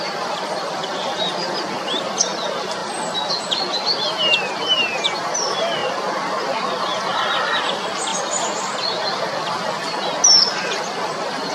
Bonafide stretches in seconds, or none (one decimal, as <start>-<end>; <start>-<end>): 0.0-11.5